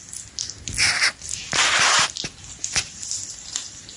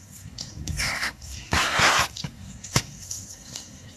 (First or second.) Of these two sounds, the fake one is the second